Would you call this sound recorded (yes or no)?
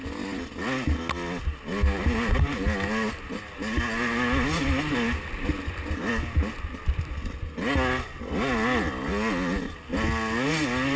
yes